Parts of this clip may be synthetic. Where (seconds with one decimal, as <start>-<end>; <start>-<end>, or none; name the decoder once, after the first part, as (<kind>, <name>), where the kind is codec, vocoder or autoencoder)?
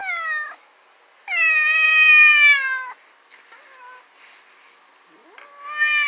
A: none